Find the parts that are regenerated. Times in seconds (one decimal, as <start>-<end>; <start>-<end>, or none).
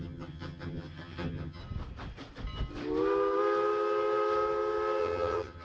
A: 0.0-1.6; 5.0-5.6